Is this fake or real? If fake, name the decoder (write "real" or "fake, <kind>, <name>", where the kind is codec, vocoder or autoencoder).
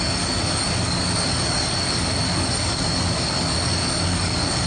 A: fake, codec, DAC